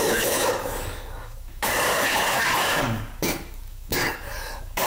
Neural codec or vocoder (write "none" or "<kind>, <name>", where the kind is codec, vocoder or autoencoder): codec, DAC